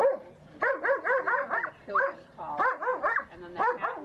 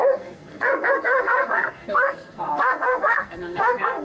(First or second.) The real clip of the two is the first